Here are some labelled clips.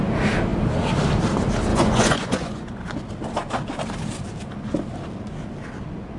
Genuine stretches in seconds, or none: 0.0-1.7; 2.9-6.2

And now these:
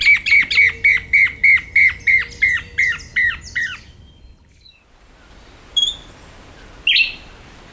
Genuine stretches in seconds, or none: 0.0-3.1; 4.7-7.7

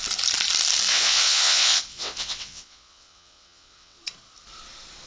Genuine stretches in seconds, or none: 0.0-0.9; 4.0-5.1

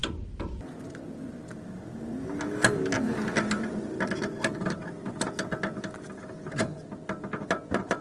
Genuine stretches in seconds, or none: 0.0-8.0

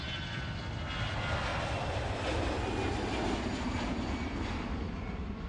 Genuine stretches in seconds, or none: 0.0-5.5

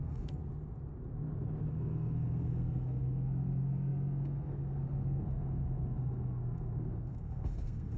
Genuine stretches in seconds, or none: 0.4-1.7